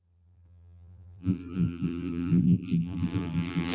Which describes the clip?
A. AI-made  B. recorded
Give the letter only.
A